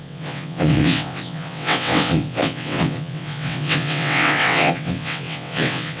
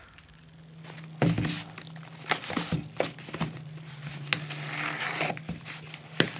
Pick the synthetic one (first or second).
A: first